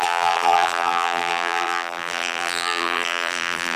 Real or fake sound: fake